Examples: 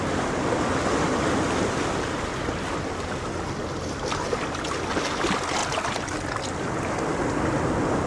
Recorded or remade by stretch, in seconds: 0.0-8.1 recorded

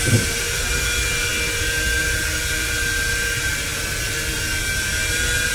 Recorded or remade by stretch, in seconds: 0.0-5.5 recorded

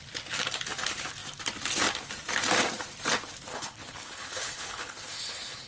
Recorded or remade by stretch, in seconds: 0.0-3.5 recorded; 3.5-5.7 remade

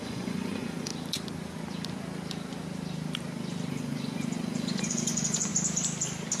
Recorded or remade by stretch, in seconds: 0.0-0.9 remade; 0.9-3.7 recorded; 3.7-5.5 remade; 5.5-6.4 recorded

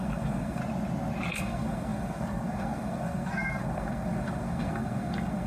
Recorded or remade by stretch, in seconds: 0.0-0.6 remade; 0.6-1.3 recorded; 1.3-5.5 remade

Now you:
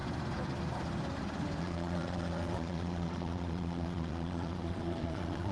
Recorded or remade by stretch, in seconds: 0.0-1.6 recorded; 1.6-5.5 remade